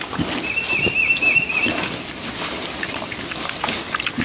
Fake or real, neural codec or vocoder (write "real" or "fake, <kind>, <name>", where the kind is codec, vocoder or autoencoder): real